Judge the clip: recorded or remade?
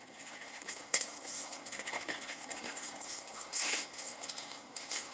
remade